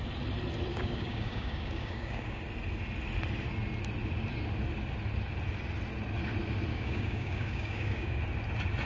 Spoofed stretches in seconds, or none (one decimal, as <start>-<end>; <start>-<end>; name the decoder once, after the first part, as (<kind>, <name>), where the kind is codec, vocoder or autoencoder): 0.7-2.4 (codec, DAC); 6.7-8.2

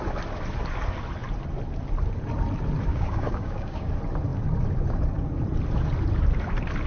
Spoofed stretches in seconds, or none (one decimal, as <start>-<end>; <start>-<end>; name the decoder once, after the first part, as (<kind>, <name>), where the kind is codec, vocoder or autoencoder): 2.9-3.9 (codec, DAC)

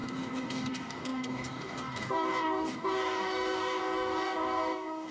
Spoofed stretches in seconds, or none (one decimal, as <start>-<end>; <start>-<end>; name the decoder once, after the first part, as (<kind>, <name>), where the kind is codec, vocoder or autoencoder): 0.0-5.1 (codec, DAC)

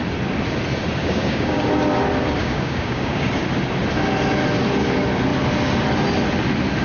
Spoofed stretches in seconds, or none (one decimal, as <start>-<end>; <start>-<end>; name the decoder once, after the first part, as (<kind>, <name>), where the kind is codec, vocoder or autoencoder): 1.0-1.6 (codec, DAC); 2.4-3.3